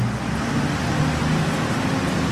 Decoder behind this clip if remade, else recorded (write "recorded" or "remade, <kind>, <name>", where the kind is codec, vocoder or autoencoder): recorded